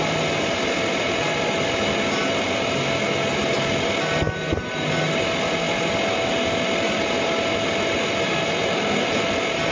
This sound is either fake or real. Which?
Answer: real